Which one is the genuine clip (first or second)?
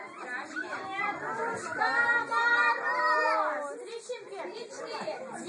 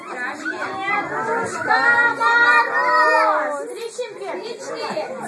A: second